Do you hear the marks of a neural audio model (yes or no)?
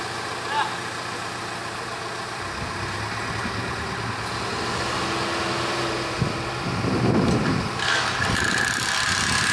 no